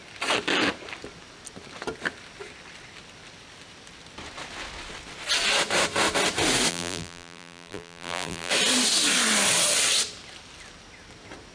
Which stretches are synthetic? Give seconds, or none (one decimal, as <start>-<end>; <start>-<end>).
6.7-8.5